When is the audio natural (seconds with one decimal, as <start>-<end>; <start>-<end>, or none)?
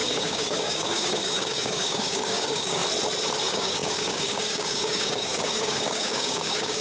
2.8-3.4